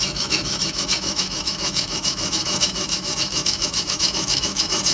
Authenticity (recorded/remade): remade